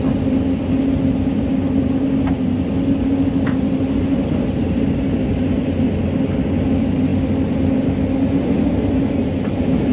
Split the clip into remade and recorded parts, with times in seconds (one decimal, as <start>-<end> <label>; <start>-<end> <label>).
0.0-9.9 recorded